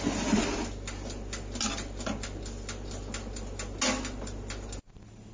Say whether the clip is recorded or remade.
recorded